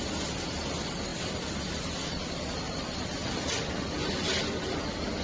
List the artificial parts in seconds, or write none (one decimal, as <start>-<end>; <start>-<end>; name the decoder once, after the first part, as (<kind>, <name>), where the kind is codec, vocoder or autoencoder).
none